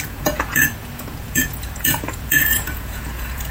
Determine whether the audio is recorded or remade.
remade